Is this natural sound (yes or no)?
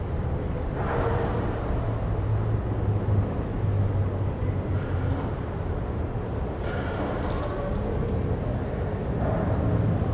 yes